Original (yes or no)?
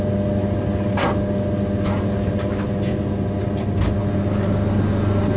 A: yes